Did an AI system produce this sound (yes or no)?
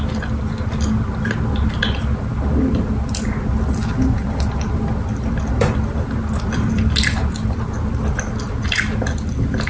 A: no